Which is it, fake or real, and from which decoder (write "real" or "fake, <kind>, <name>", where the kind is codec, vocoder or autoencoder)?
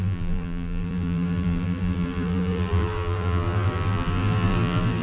fake, vocoder, BigVGAN v2